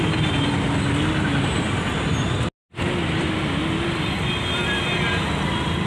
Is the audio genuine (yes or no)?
yes